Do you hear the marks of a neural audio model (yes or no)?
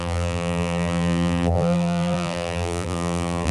yes